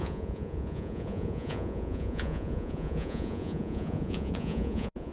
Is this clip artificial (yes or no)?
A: yes